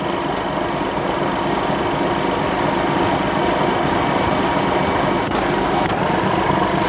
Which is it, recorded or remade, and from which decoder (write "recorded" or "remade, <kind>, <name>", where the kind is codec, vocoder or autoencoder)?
recorded